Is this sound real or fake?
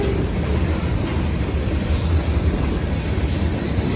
real